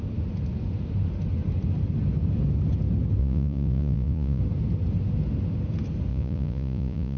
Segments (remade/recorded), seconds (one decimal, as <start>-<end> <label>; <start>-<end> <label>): 0.0-3.2 recorded; 3.2-4.4 remade; 4.4-6.1 recorded; 6.1-7.2 remade